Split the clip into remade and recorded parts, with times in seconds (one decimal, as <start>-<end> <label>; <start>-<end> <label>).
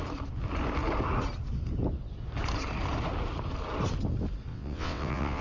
0.0-4.5 recorded; 4.5-5.4 remade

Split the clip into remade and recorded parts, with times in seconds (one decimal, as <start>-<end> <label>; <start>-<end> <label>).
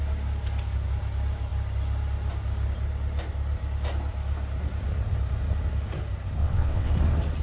0.0-6.4 recorded; 6.4-6.9 remade; 6.9-7.4 recorded